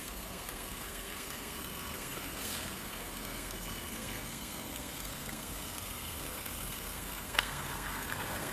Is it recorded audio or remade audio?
remade